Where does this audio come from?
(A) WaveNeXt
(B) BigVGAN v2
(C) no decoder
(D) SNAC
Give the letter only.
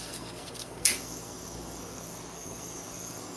D